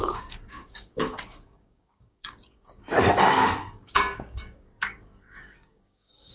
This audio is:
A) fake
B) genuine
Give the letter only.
A